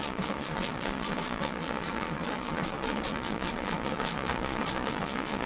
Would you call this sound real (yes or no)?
no